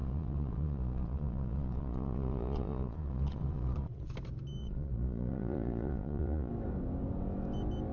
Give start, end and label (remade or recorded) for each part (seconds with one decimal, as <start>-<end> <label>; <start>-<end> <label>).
0.0-4.1 remade; 4.1-4.6 recorded; 4.6-6.5 remade; 6.5-7.9 recorded